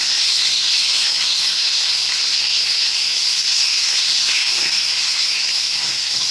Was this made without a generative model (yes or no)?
no